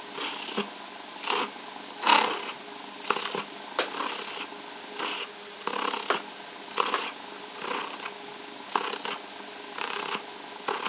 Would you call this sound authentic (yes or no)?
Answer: yes